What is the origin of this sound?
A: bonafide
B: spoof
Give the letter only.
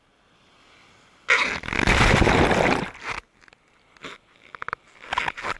A